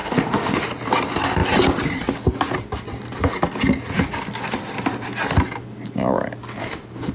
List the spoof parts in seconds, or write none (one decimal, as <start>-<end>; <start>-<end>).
0.0-0.7; 6.6-7.1